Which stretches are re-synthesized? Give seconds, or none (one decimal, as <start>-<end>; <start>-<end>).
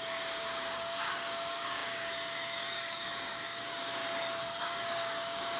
0.0-4.0; 4.6-5.6